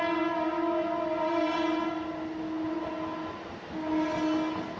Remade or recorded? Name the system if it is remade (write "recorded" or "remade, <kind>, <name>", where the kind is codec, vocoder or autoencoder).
recorded